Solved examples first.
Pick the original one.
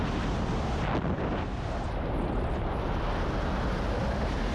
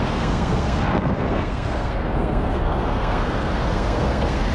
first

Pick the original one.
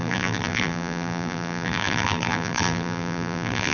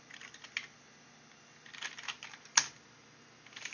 second